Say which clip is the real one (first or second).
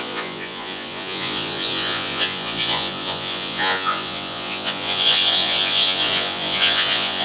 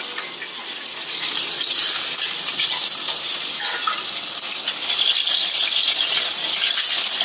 second